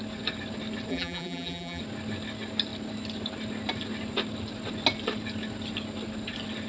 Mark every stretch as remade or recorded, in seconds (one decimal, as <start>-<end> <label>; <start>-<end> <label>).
0.0-0.9 recorded; 0.9-1.8 remade; 1.8-6.7 recorded